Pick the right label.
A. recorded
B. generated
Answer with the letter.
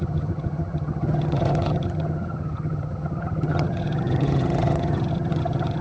B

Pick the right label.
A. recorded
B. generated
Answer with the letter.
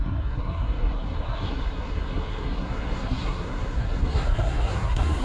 B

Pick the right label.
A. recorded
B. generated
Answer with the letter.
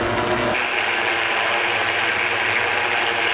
A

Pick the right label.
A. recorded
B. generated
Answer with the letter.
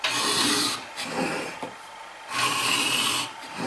A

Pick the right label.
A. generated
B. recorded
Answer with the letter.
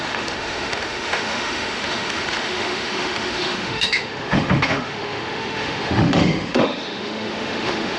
A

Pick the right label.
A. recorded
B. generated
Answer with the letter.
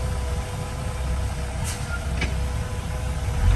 A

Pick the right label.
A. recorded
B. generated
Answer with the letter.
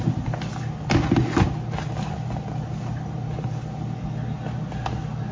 A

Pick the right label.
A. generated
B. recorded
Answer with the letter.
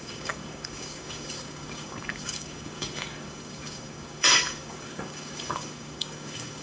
A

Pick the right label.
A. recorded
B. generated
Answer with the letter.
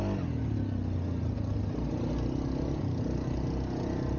A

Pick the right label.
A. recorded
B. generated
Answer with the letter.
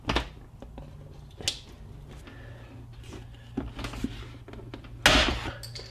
A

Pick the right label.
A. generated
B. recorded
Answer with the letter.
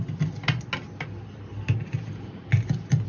B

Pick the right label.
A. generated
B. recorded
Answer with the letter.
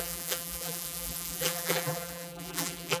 A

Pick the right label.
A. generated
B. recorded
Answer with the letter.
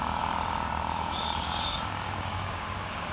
A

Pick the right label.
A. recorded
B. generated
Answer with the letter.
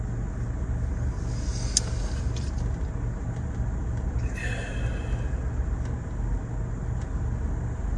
A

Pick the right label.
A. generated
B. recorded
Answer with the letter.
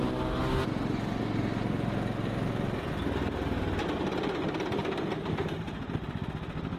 B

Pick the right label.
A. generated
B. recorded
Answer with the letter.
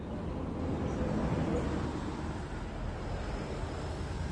B